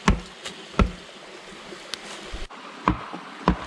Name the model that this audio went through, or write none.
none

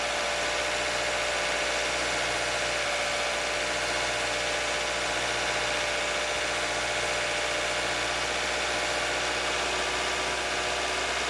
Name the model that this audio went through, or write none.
none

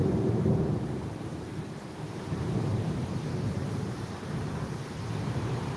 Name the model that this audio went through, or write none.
vocoder, BigVGAN v2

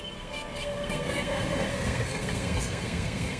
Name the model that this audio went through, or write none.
codec, SNAC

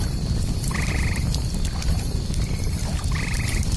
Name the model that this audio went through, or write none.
vocoder, BigVGAN v2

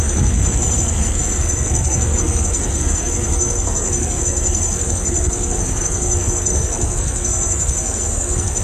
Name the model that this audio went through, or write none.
codec, SNAC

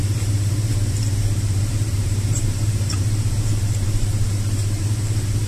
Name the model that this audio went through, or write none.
vocoder, BigVGAN v2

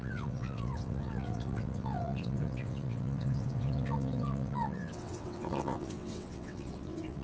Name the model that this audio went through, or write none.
vocoder, WaveNeXt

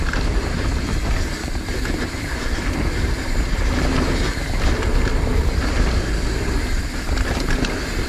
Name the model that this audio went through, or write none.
none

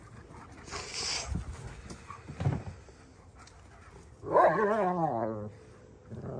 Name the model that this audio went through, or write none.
none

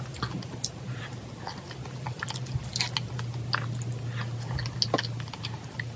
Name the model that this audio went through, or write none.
none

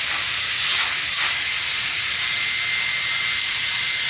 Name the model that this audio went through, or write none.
none